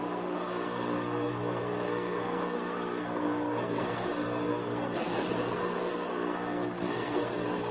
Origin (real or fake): fake